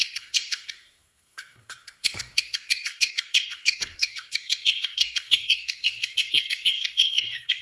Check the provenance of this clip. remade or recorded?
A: remade